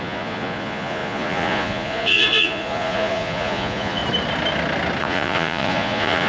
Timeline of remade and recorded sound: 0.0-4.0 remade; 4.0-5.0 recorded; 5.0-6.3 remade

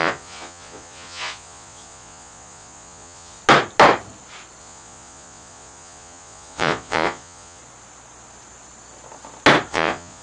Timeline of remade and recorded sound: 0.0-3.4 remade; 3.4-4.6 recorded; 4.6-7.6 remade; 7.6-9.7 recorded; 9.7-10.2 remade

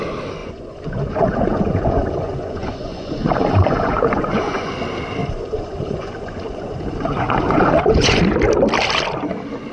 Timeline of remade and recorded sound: 0.0-0.4 recorded; 0.4-4.7 remade; 4.7-5.2 recorded; 5.2-8.2 remade; 8.2-9.7 recorded

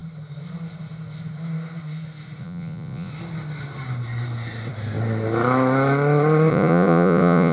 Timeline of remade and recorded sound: 0.0-2.4 recorded; 2.4-3.1 remade; 3.1-6.5 recorded; 6.5-7.5 remade

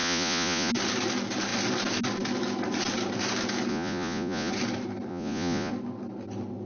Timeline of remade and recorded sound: 0.0-0.7 remade; 0.7-3.7 recorded; 3.7-4.5 remade; 4.5-5.1 recorded; 5.1-5.7 remade; 5.7-6.7 recorded